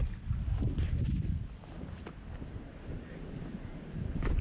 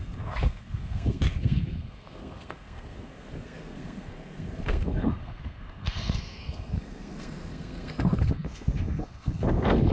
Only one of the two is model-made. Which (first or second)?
second